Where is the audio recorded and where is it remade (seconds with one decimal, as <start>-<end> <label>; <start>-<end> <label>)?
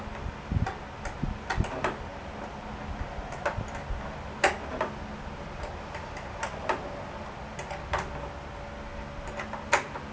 0.0-10.1 recorded